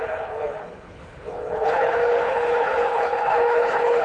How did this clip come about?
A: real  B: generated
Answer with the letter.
B